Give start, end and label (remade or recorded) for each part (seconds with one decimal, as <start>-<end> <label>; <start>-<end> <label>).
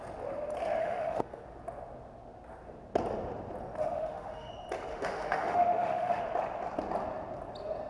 0.0-0.8 recorded; 0.8-1.4 remade; 1.4-3.8 recorded; 3.8-4.5 remade; 4.5-4.9 recorded; 4.9-6.2 remade; 6.2-7.9 recorded